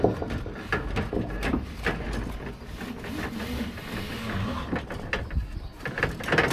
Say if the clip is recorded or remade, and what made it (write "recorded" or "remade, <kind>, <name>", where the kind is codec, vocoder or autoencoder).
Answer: recorded